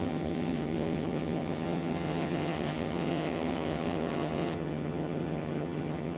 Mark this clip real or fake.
fake